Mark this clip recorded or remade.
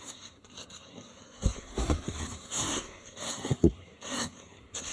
remade